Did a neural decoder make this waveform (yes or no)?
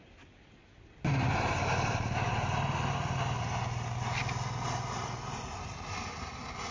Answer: no